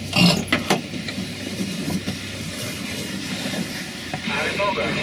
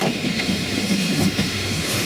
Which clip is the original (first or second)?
first